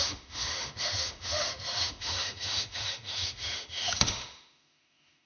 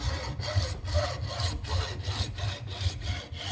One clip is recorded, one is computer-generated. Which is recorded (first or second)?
second